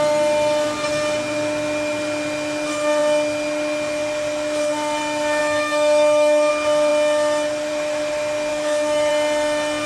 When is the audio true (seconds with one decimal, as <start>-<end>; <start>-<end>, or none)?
0.0-5.4; 6.5-8.5; 9.1-9.9